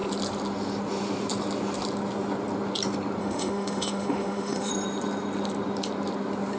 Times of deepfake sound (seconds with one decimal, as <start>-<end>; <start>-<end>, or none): 3.2-4.7